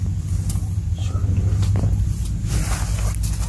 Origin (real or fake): real